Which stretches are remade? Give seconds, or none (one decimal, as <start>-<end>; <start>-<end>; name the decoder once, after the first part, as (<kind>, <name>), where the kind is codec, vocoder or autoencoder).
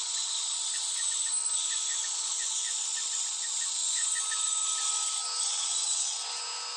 5.5-6.2 (vocoder, WaveNeXt)